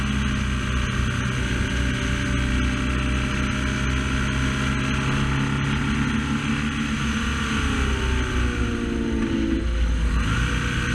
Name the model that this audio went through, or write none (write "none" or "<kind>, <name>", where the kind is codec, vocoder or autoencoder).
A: none